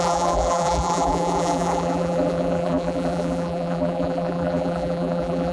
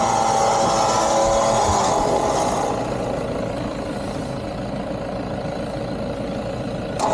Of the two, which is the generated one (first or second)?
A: first